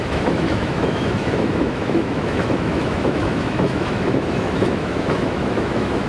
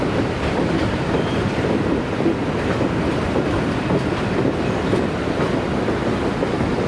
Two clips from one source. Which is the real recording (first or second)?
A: second